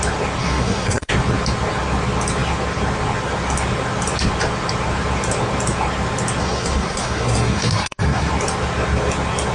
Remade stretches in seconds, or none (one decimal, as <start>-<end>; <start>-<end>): 0.4-1.1; 6.4-8.3